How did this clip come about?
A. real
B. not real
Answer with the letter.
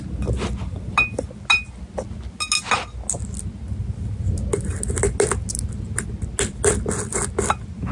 A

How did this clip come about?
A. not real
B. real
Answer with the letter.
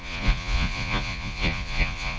A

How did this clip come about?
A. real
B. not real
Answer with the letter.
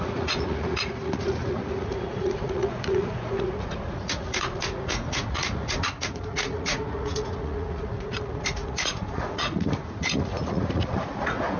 B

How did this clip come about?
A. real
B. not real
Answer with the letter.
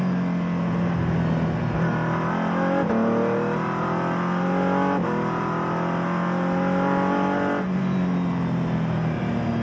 A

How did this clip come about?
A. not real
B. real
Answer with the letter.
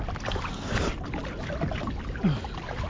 B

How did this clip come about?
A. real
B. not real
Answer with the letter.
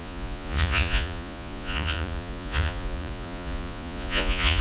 B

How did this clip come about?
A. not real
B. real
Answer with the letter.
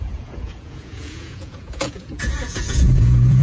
A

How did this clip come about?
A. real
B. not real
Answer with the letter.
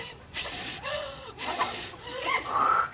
B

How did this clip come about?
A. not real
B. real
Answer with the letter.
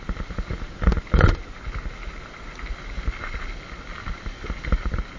B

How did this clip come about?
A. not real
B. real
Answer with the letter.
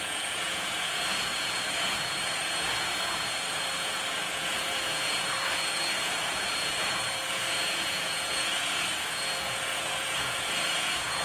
A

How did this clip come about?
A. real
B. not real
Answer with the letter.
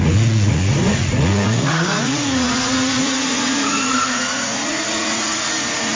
B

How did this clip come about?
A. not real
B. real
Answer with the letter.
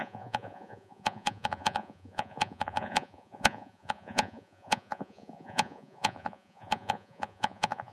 A